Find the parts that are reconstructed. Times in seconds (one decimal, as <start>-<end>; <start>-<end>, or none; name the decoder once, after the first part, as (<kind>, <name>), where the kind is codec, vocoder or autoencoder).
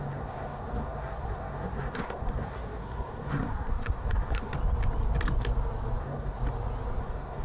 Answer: 0.0-4.5 (codec, SNAC); 6.0-6.4; 7.0-7.4